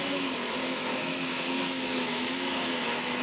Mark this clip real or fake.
fake